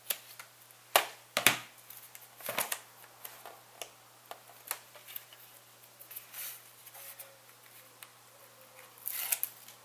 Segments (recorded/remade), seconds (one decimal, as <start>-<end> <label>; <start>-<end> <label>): 0.0-6.8 recorded; 6.8-8.4 remade; 8.4-9.8 recorded